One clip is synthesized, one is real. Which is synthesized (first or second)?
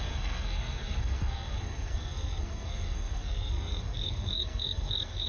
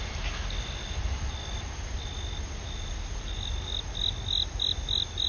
first